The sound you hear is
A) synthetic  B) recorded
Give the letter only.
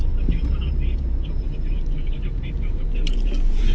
A